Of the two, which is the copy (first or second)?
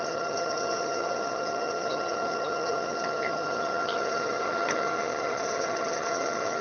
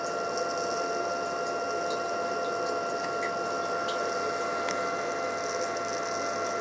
first